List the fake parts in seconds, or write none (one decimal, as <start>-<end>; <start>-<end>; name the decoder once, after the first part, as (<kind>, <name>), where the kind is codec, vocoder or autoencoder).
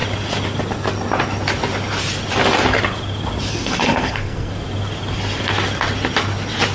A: 3.5-4.5 (codec, SNAC)